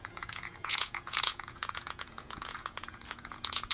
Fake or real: fake